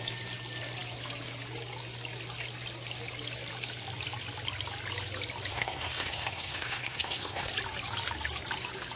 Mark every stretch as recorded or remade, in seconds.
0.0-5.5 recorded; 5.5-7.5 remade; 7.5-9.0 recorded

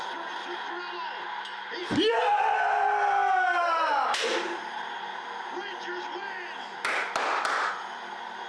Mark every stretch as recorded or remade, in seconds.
0.0-8.5 recorded

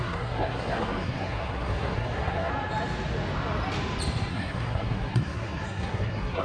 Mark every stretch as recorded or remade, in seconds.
0.0-2.5 remade; 2.5-4.3 recorded; 4.3-6.4 remade